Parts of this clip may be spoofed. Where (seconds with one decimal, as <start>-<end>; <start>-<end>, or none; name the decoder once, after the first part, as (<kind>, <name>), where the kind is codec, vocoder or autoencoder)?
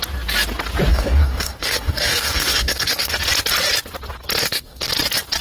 0.9-3.1 (codec, DAC); 4.4-4.9